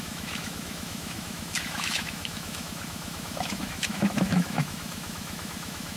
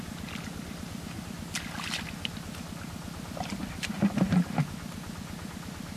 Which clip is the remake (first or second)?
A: first